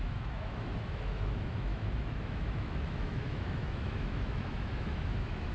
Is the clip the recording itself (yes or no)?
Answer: no